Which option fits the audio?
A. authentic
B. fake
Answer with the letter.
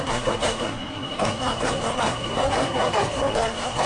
B